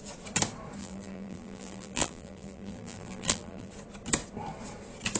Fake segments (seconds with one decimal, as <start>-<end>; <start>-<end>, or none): 0.8-3.7